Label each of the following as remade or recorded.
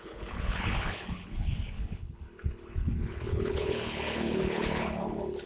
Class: remade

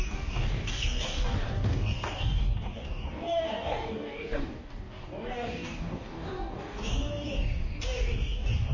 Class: remade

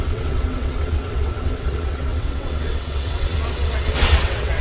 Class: remade